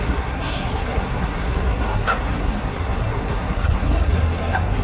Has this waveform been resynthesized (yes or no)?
yes